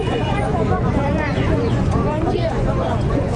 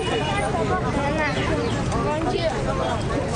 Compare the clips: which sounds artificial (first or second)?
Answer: first